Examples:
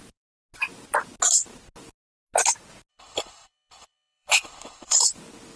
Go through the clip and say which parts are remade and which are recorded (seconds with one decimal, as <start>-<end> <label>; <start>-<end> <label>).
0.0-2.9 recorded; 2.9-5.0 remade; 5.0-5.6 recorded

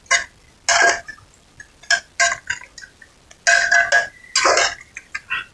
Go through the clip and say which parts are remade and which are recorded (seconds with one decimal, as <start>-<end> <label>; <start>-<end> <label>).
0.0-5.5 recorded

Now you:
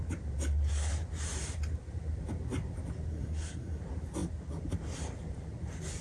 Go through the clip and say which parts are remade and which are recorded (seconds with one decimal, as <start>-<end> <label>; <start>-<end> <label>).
0.0-3.1 recorded; 3.1-3.8 remade; 3.8-6.0 recorded

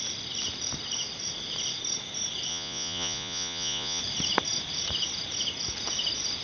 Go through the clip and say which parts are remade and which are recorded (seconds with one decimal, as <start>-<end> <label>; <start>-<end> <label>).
0.0-2.5 recorded; 2.5-4.0 remade; 4.0-6.4 recorded

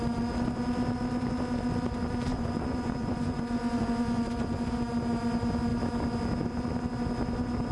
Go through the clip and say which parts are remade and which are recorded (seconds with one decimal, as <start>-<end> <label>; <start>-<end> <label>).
0.0-2.3 recorded; 2.3-4.7 remade; 4.7-7.7 recorded

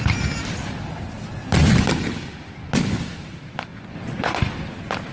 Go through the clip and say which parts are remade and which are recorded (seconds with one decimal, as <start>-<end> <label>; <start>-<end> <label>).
0.0-3.7 recorded; 3.7-4.4 remade; 4.4-5.1 recorded

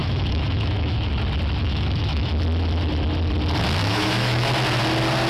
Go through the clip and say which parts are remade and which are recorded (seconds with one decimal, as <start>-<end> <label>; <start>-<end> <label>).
0.0-1.1 remade; 1.1-1.6 recorded; 1.6-2.3 remade; 2.3-3.8 recorded; 3.8-4.5 remade; 4.5-5.3 recorded